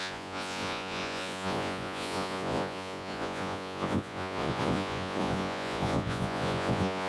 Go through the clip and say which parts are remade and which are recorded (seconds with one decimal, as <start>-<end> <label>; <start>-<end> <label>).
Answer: 0.0-7.1 remade